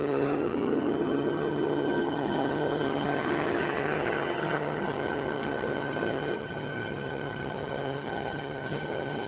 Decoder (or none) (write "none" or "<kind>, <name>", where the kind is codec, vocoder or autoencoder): vocoder, HiFi-GAN